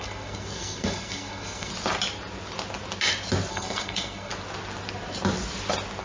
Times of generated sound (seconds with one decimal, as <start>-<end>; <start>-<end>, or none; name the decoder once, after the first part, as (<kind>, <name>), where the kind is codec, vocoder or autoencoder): 0.0-1.7 (codec, SNAC); 3.5-4.3